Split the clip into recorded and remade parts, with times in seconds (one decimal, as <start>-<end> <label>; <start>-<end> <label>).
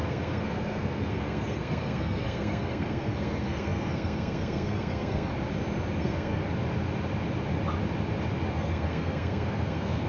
0.0-5.3 remade; 5.3-6.0 recorded; 6.0-6.4 remade; 6.4-8.5 recorded; 8.5-10.1 remade